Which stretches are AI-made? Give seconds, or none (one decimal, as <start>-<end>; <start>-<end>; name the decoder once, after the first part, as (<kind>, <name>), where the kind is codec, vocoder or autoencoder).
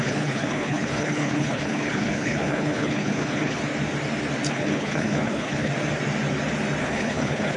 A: 0.0-3.6 (codec, HILCodec); 4.5-5.7; 6.8-7.6